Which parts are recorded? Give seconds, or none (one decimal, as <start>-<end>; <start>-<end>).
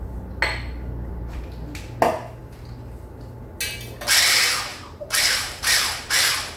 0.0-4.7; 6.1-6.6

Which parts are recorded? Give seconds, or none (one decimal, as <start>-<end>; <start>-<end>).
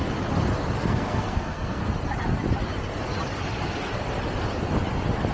0.0-0.8; 1.8-5.3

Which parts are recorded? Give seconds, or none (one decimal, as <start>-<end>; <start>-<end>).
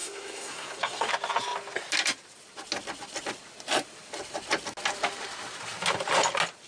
1.1-6.7